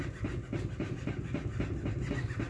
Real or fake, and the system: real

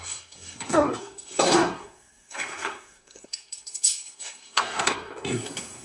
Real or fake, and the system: fake, codec, SNAC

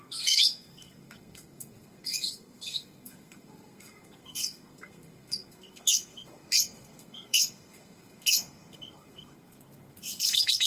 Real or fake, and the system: fake, codec, SNAC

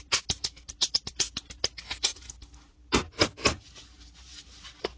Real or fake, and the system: real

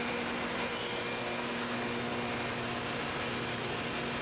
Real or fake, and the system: real